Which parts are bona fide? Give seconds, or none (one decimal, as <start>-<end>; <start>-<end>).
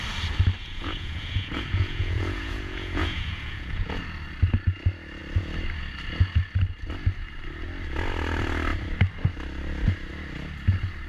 0.0-0.6; 4.0-11.1